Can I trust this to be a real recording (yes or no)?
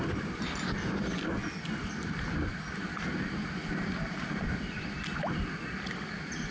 yes